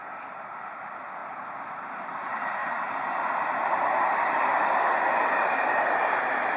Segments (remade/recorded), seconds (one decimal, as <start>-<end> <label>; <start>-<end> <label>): 0.0-1.2 recorded; 1.2-1.9 remade; 1.9-6.6 recorded